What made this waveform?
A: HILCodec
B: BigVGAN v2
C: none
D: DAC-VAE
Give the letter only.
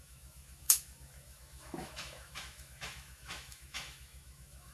D